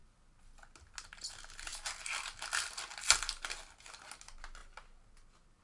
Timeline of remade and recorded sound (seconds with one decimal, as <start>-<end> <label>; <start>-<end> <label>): 0.0-5.6 recorded